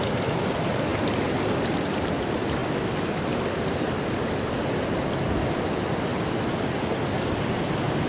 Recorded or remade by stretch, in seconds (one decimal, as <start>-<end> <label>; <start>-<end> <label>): 0.0-8.1 recorded